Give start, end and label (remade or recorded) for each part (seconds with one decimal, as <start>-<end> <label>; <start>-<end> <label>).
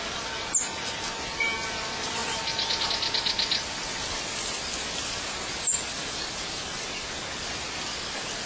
0.0-8.5 recorded